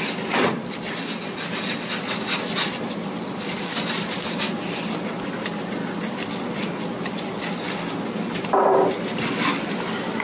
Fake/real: real